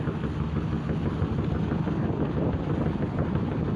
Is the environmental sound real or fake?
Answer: real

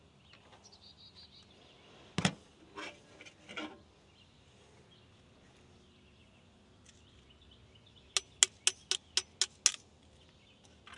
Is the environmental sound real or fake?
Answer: real